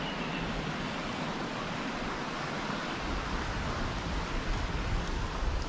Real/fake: real